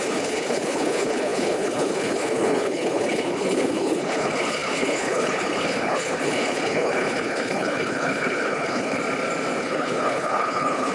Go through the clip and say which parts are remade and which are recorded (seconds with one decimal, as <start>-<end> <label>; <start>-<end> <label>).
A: 0.0-9.0 remade; 9.0-9.6 recorded; 9.6-10.9 remade